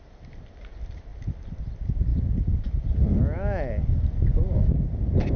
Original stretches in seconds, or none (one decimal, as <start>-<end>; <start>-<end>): 0.0-5.4